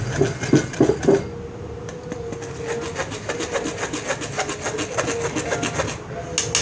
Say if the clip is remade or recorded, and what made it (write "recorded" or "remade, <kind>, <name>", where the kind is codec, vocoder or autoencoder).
recorded